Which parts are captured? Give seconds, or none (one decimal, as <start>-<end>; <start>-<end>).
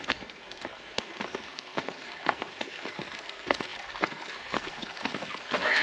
none